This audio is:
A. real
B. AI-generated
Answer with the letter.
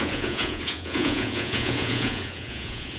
B